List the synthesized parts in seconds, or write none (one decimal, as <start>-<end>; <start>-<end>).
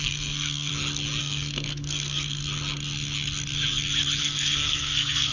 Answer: 0.0-0.7; 1.2-2.4; 4.2-5.3